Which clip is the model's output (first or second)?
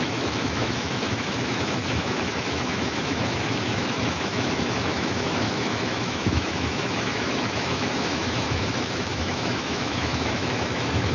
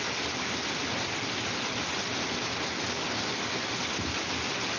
first